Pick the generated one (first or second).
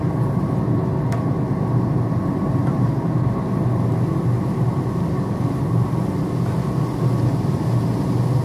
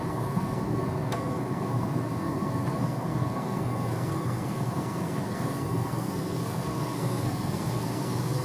second